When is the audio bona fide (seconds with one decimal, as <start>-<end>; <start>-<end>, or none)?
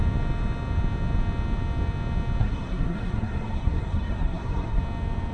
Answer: 0.0-2.4; 4.8-5.3